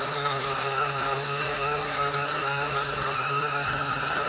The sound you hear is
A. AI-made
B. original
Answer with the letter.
A